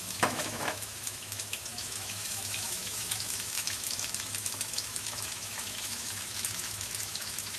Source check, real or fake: fake